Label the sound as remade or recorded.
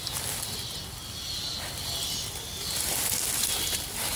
recorded